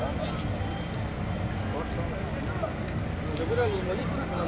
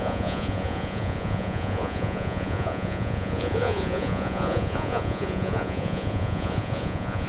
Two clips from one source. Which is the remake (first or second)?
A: second